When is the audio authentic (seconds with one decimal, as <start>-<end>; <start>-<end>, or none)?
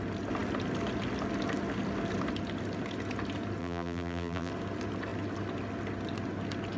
0.0-3.6; 4.5-6.8